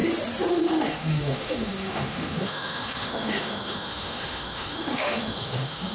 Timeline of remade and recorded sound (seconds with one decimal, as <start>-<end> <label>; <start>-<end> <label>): 0.0-0.5 recorded; 0.5-5.9 remade